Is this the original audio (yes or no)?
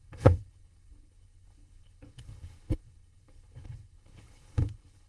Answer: no